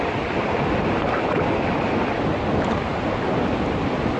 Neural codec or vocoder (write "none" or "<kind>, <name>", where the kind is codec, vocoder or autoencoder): none